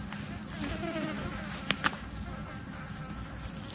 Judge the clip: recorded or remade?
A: recorded